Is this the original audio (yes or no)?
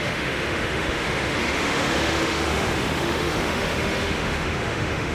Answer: no